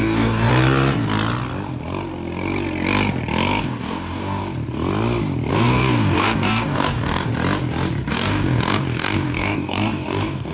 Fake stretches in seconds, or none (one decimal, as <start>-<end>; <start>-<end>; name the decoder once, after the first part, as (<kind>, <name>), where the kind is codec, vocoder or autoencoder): 0.0-0.5 (codec, DAC); 3.6-4.4; 5.5-7.3; 8.1-10.5